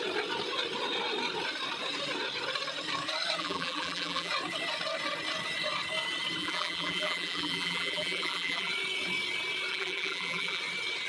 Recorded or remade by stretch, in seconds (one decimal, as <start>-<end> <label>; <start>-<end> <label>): 0.0-3.4 recorded; 3.4-4.3 remade; 4.3-6.4 recorded; 6.4-8.7 remade; 8.7-9.7 recorded; 9.7-10.6 remade; 10.6-11.1 recorded